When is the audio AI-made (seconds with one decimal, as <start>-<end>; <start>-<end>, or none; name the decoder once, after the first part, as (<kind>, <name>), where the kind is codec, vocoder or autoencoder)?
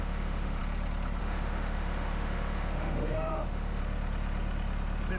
0.0-0.6 (autoencoder, DAC-VAE); 1.2-3.8